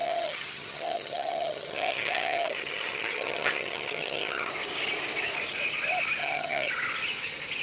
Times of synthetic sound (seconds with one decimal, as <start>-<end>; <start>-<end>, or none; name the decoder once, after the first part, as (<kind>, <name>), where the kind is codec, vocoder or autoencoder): 0.0-4.5 (vocoder, HiFi-GAN); 6.2-6.7